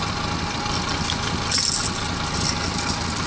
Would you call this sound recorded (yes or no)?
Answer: yes